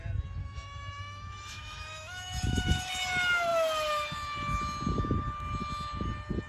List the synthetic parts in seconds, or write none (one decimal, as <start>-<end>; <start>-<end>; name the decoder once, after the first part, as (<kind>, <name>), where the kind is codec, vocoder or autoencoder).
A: 0.4-2.9 (autoencoder, DAC-VAE)